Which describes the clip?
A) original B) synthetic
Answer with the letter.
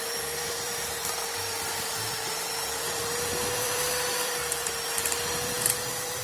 B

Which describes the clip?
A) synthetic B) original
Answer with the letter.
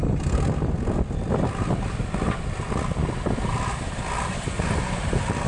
B